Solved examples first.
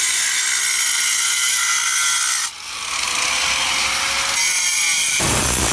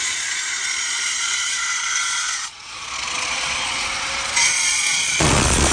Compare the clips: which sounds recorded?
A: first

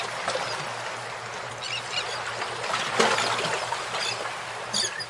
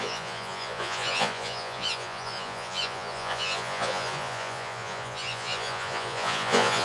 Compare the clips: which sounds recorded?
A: first